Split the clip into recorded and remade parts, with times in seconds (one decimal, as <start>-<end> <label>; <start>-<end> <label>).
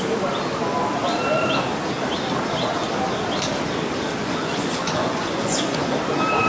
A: 0.0-4.2 recorded; 4.2-6.0 remade; 6.0-6.5 recorded